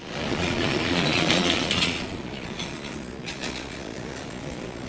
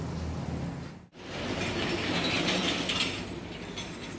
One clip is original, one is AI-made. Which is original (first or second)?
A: second